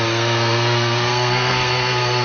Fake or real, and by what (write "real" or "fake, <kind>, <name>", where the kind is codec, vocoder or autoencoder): fake, codec, SNAC